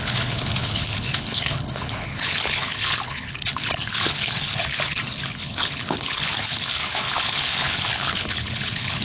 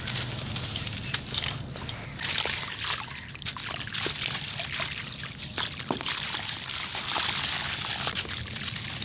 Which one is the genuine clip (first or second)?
second